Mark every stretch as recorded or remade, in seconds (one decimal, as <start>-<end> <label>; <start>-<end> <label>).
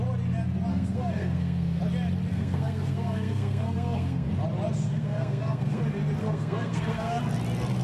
0.0-0.7 recorded; 0.7-1.8 remade; 1.8-2.3 recorded; 2.3-4.3 remade; 4.3-4.9 recorded; 4.9-5.8 remade; 5.8-6.2 recorded; 6.2-7.2 remade; 7.2-7.8 recorded